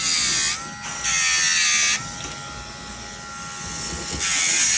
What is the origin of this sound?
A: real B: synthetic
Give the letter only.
A